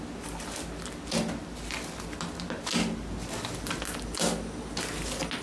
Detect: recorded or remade recorded